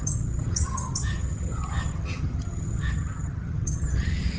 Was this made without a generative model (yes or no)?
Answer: no